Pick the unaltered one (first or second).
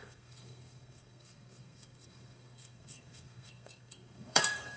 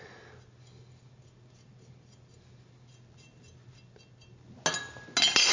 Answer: second